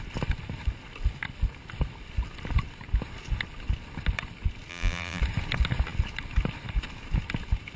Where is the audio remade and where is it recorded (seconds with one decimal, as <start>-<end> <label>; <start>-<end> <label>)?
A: 0.0-4.7 recorded; 4.7-5.2 remade; 5.2-7.8 recorded